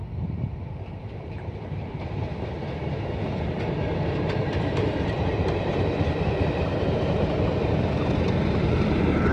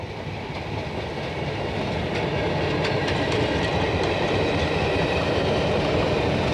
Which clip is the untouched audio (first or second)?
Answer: second